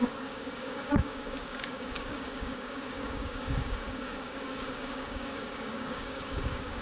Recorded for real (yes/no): no